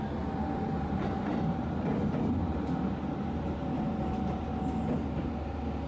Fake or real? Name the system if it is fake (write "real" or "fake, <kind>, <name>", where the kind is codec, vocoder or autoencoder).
real